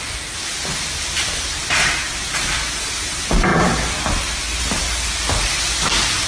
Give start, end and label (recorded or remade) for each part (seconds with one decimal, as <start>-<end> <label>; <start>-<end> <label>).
0.0-1.8 recorded; 1.8-2.3 remade; 2.3-6.3 recorded